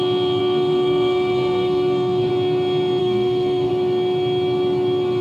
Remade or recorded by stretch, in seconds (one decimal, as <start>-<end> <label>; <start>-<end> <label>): 0.0-0.4 recorded; 0.4-2.3 remade; 2.3-3.0 recorded; 3.0-3.7 remade; 3.7-5.2 recorded